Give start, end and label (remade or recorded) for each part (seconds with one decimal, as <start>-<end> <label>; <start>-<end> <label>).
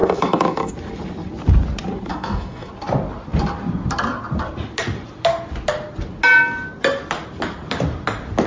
0.0-0.7 remade; 0.7-2.1 recorded; 2.1-2.7 remade; 2.7-8.5 recorded